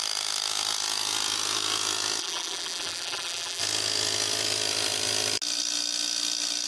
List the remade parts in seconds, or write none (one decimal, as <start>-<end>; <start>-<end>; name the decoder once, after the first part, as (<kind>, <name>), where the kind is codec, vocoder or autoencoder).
2.2-3.6 (vocoder, BigVGAN v2)